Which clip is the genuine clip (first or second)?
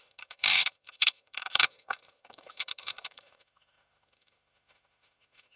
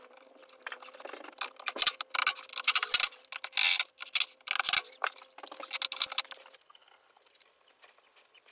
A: second